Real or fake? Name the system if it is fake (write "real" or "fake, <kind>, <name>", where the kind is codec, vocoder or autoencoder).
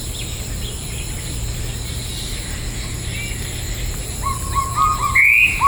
real